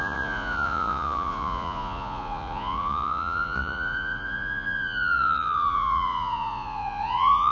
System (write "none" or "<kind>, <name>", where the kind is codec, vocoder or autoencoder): vocoder, Vocos